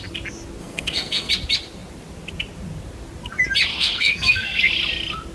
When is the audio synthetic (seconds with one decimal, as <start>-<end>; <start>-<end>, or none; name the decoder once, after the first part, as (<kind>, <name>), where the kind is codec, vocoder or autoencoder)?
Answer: 0.6-1.3 (codec, SNAC); 3.7-4.6